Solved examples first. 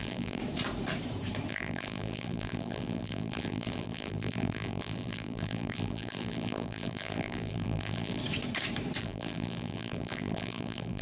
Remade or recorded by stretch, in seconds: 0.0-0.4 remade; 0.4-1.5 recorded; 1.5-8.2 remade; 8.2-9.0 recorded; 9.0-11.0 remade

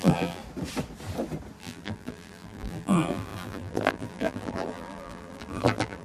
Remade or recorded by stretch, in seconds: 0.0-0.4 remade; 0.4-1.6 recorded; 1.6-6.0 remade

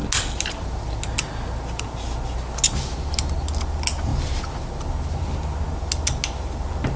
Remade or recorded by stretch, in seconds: 0.0-7.0 recorded